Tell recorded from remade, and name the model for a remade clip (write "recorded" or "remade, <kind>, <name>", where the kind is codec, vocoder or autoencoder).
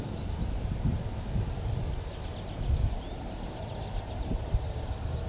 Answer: recorded